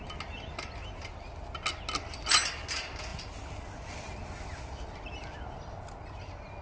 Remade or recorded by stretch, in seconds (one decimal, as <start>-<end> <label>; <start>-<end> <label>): 0.0-6.6 recorded